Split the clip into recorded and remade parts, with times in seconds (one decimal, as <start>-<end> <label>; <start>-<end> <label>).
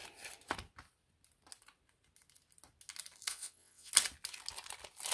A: 0.0-3.3 recorded; 3.3-3.9 remade; 3.9-5.1 recorded